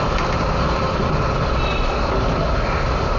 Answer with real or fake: real